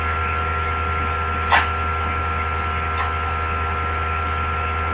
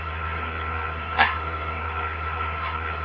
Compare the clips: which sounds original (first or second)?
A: first